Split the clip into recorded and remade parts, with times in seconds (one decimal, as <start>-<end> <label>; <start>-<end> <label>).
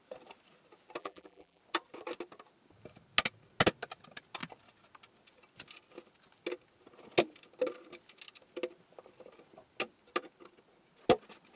0.0-1.0 recorded; 1.0-1.6 remade; 1.6-11.6 recorded